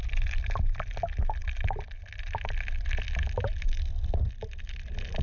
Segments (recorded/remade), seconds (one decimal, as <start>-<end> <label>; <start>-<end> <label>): 0.0-5.2 recorded